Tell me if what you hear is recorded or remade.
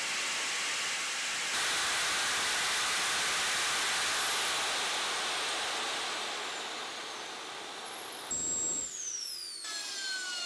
recorded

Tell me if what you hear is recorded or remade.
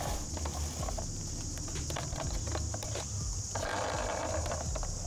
recorded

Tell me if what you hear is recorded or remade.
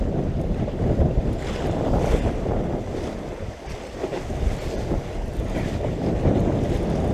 recorded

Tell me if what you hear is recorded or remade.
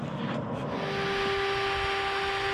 recorded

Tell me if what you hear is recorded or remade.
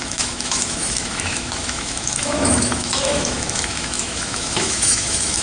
remade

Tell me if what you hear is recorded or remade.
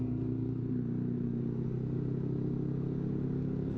recorded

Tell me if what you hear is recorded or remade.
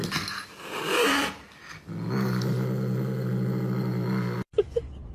recorded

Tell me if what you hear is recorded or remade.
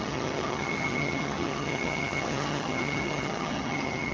remade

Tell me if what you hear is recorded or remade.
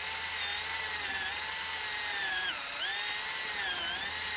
recorded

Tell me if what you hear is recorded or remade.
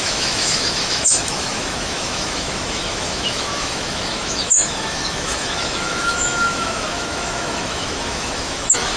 remade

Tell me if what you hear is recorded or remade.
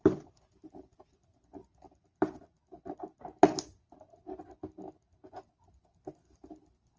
recorded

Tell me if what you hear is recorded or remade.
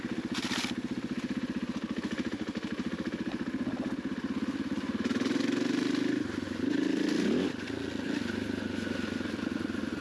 recorded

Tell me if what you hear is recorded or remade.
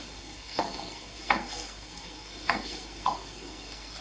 remade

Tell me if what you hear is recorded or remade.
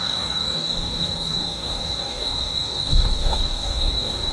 remade